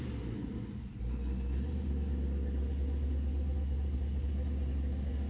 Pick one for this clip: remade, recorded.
recorded